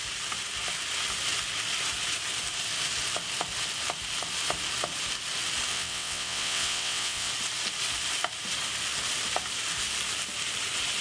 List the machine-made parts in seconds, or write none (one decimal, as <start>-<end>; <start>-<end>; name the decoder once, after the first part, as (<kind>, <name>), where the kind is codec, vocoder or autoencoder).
5.7-7.3 (vocoder, WaveNeXt)